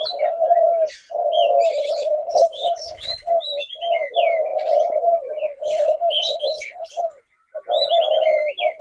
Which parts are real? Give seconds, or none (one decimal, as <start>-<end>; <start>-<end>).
0.0-1.7; 3.1-5.5; 7.2-8.8